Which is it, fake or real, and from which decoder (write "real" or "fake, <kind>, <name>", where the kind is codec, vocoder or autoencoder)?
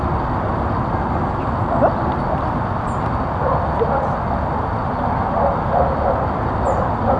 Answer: real